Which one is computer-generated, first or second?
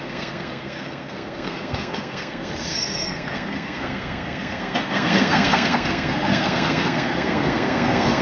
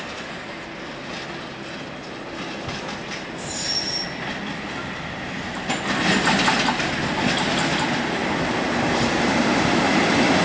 first